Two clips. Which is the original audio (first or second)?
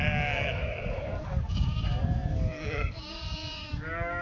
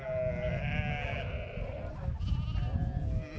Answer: second